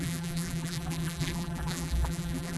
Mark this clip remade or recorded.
remade